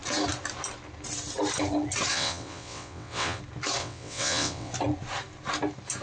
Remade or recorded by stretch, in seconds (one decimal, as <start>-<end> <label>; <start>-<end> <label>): 0.0-2.1 recorded; 2.1-3.4 remade; 3.4-3.8 recorded; 3.8-4.7 remade; 4.7-6.0 recorded